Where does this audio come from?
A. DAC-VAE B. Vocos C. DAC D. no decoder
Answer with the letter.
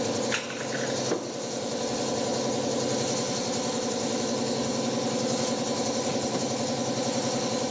D